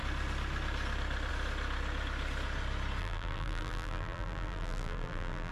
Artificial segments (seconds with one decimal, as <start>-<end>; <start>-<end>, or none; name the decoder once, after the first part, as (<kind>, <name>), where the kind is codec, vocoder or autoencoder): 3.0-5.5 (vocoder, BigVGAN v2)